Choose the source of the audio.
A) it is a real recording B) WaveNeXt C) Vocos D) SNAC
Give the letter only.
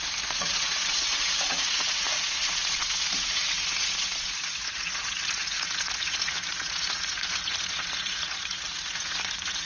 C